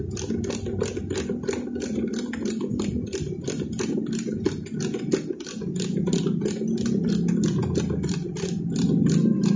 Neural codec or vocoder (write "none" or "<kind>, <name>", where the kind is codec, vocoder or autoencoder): none